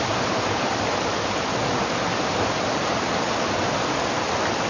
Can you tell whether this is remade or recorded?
recorded